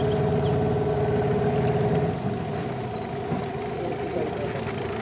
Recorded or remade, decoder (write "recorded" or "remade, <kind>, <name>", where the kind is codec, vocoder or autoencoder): recorded